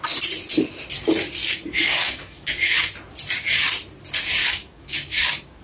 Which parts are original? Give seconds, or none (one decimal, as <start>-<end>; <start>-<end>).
0.0-1.4; 2.8-4.4